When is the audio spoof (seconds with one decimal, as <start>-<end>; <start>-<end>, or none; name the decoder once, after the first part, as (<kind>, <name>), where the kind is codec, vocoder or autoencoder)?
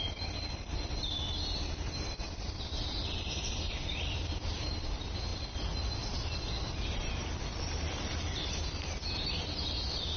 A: none